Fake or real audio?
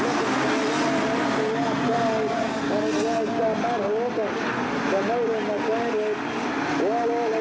real